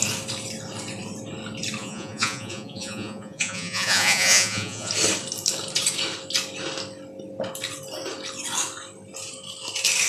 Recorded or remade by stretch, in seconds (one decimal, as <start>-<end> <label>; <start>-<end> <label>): 0.0-1.8 recorded; 1.8-4.9 remade; 4.9-10.1 recorded